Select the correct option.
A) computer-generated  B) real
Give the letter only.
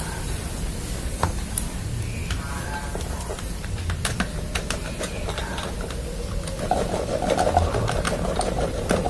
B